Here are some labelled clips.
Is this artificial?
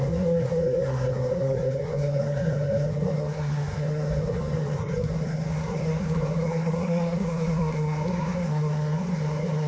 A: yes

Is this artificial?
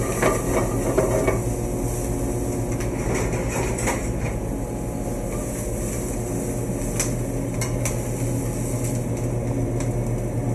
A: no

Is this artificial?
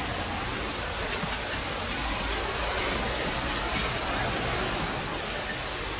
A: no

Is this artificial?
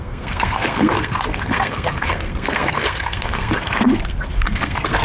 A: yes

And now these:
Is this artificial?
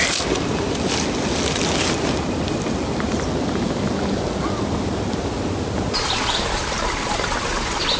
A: no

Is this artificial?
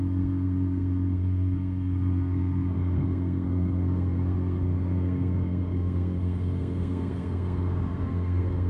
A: yes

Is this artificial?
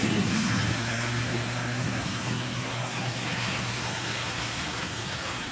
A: yes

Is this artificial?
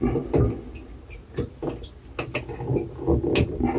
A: no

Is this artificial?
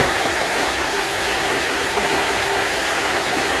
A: yes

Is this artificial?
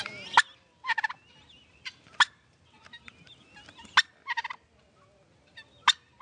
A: no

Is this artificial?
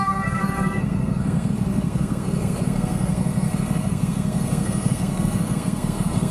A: yes